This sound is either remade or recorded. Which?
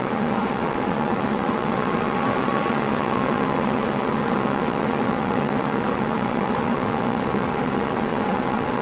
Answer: remade